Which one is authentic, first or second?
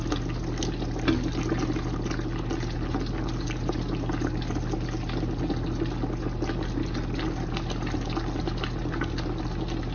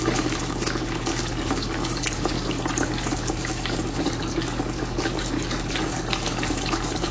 first